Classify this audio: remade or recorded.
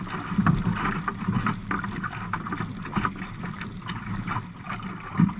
recorded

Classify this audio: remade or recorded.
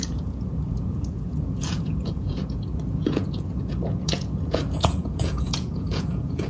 remade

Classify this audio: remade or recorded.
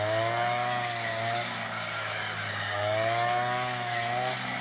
remade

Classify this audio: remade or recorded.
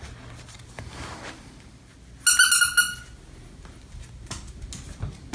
recorded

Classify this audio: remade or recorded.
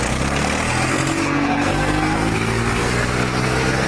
remade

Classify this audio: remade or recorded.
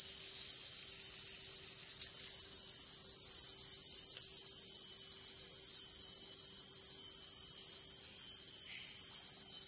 recorded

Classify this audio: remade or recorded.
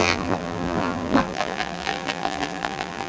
remade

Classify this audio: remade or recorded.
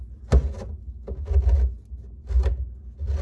recorded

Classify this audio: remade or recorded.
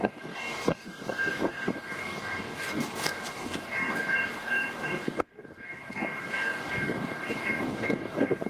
remade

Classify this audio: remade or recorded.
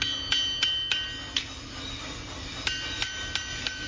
recorded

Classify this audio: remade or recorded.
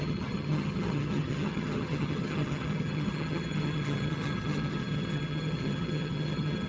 remade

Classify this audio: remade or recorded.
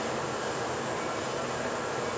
recorded